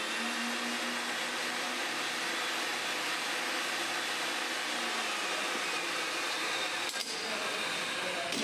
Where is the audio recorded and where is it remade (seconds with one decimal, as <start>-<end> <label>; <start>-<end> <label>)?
0.0-8.4 recorded